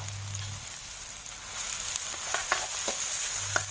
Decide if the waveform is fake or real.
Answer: real